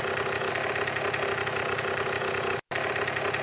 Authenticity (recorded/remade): recorded